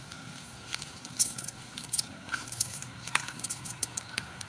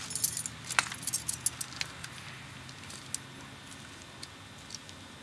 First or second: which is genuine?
second